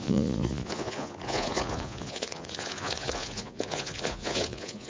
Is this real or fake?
fake